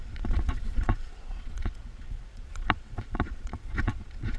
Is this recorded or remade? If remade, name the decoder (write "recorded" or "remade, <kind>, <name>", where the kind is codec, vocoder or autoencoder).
remade, vocoder, Vocos